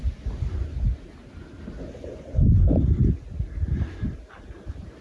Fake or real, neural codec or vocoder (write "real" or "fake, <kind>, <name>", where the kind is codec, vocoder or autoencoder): real